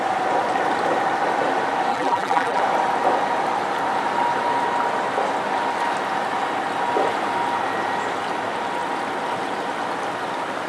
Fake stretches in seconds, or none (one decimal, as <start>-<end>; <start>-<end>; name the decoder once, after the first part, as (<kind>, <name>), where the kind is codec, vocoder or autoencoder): 1.9-2.6 (vocoder, BigVGAN v2)